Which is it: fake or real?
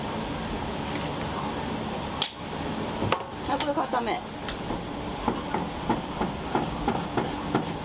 real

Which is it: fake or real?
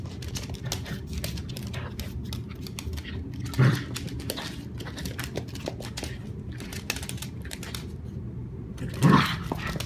real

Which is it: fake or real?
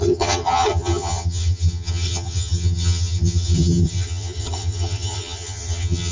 fake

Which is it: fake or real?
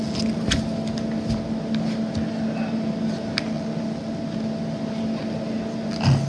real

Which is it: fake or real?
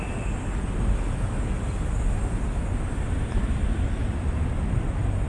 real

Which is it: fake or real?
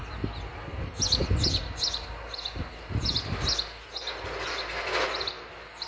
real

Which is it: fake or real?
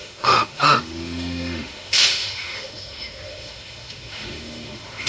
fake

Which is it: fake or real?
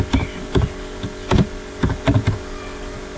real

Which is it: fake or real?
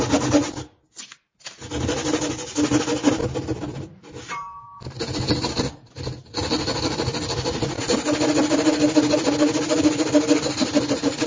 real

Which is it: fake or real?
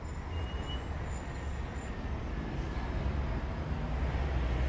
real